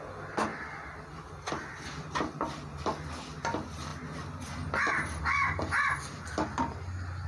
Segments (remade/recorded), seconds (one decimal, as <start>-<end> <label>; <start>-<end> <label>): 0.0-7.3 recorded